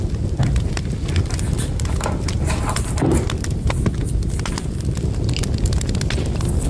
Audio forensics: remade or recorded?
recorded